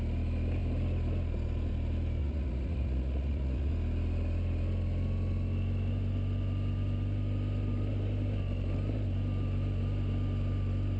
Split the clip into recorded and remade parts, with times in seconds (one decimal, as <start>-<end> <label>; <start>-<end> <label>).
0.0-2.2 recorded; 2.2-3.7 remade; 3.7-11.0 recorded